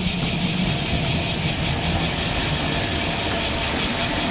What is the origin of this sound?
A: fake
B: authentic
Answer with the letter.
B